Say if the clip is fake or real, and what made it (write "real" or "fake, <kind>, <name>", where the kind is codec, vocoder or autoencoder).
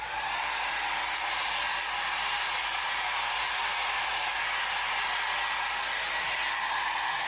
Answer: real